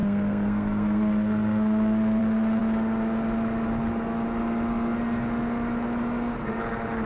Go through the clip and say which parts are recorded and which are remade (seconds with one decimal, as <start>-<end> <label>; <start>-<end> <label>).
0.0-2.2 remade; 2.2-7.1 recorded